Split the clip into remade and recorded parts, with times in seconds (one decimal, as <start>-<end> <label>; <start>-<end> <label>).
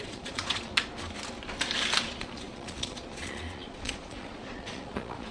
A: 0.0-0.7 remade; 0.7-2.0 recorded; 2.0-5.3 remade